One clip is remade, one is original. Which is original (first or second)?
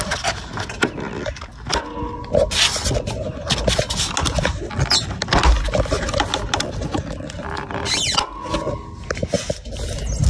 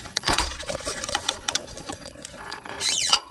first